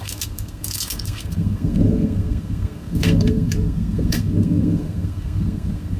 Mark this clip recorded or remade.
remade